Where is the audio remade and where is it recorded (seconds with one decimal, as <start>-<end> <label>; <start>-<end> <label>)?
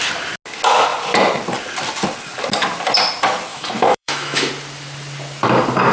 0.0-3.5 recorded; 3.5-4.5 remade; 4.5-5.9 recorded